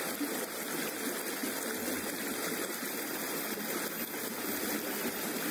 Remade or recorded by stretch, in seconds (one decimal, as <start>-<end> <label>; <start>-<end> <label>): 0.0-5.5 recorded